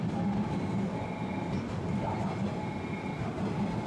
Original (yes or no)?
yes